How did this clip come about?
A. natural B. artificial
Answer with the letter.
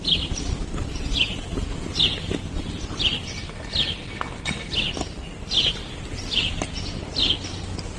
A